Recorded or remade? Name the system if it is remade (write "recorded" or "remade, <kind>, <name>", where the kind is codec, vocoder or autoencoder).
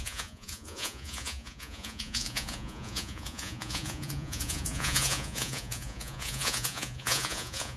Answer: remade, vocoder, Vocos